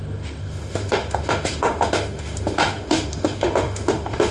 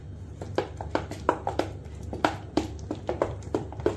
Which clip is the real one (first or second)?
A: second